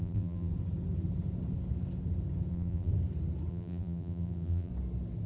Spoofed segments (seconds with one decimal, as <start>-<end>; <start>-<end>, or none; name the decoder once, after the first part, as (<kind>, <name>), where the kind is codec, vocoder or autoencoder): 0.0-0.5 (vocoder, BigVGAN v2); 2.5-2.9; 3.5-4.7